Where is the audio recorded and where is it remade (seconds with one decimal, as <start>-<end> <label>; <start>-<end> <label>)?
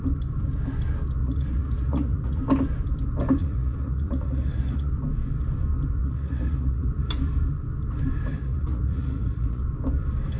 0.0-1.2 recorded; 1.2-2.4 remade; 2.4-3.4 recorded; 3.4-4.9 remade; 4.9-6.0 recorded; 6.0-6.9 remade; 6.9-8.4 recorded; 8.4-9.6 remade; 9.6-10.4 recorded